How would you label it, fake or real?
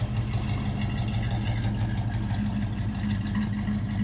real